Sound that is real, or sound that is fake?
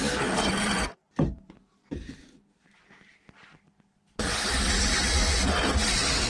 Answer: real